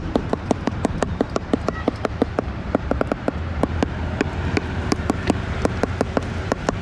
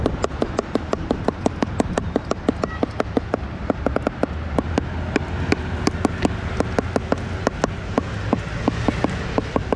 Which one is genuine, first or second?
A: second